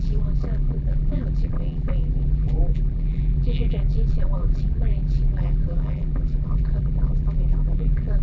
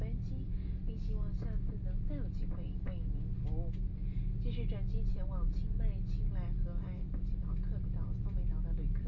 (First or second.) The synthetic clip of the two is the first